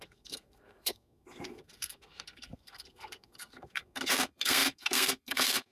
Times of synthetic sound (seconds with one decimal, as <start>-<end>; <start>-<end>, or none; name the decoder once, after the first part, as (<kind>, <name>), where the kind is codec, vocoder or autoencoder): 0.0-5.7 (codec, SNAC)